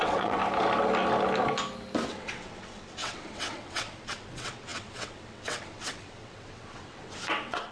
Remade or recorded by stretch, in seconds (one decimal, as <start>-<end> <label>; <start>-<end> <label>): 0.0-0.4 remade; 0.4-2.1 recorded; 2.1-7.7 remade

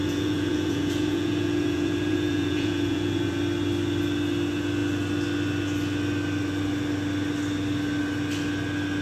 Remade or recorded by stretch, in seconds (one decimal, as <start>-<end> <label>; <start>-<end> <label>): 0.0-3.4 remade; 3.4-9.0 recorded

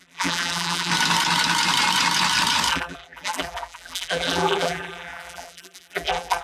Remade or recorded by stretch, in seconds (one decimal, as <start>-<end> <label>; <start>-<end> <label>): 0.0-0.9 remade; 0.9-2.7 recorded; 2.7-6.4 remade

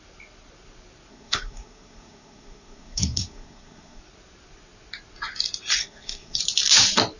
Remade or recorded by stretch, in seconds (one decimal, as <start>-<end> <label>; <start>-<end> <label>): 0.0-1.1 recorded; 1.1-4.0 remade; 4.0-5.8 recorded; 5.8-6.4 remade; 6.4-7.2 recorded

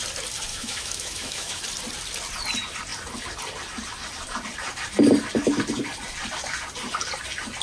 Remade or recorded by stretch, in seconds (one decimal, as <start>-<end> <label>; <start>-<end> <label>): 0.0-0.5 recorded; 0.5-1.6 remade; 1.6-7.6 recorded

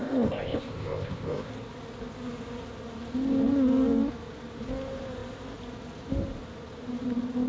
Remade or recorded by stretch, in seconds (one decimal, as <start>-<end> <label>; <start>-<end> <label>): 0.0-1.5 remade; 1.5-7.5 recorded

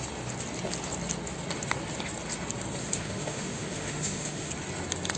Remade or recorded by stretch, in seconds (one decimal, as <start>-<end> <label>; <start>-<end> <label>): 0.0-2.8 recorded; 2.8-4.5 remade; 4.5-5.2 recorded

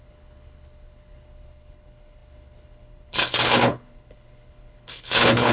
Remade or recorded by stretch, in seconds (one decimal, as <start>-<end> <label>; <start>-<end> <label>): 0.0-5.5 remade